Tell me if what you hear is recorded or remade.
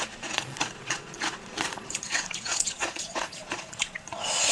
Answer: remade